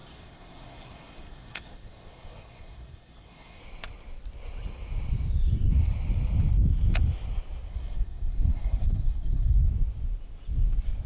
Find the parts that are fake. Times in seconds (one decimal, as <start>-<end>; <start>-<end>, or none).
0.0-3.6; 7.7-9.7